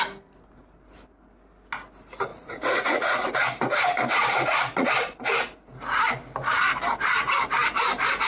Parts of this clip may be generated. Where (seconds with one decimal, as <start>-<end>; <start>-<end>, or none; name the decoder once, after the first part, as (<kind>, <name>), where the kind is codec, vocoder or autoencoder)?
2.3-3.3 (vocoder, Vocos); 4.2-4.9